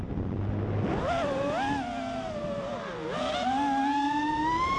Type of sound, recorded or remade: recorded